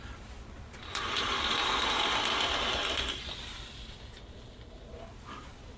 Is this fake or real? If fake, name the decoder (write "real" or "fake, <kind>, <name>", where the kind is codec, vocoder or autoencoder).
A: fake, vocoder, BigVGAN v2